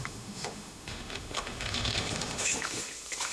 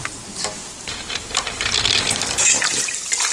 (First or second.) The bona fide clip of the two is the second